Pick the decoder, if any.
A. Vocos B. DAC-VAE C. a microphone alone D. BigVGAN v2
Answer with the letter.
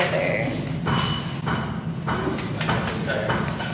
C